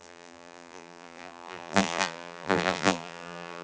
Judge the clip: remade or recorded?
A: remade